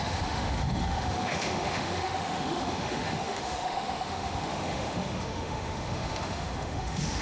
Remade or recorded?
remade